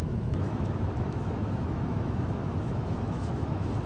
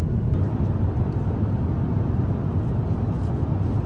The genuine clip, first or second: second